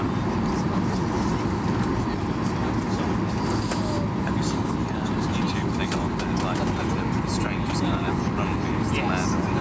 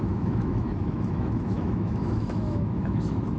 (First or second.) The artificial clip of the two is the second